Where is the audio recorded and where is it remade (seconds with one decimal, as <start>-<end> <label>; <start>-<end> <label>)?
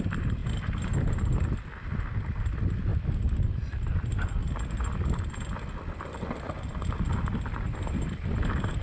0.0-0.4 recorded; 0.4-0.9 remade; 0.9-8.8 recorded